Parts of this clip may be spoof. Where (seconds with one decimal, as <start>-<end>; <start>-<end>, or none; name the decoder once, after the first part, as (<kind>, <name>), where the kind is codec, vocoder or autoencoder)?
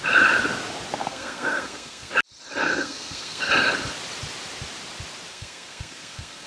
1.0-2.1 (codec, SNAC); 2.6-3.5; 5.3-6.5